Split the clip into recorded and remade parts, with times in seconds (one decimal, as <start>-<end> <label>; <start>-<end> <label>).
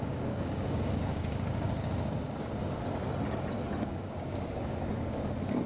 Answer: 0.0-3.0 remade; 3.0-3.8 recorded; 3.8-5.7 remade